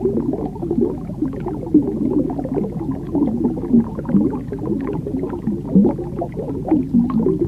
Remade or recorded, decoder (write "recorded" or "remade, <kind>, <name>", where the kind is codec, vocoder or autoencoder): recorded